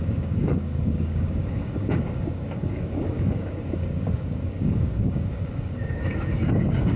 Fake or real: fake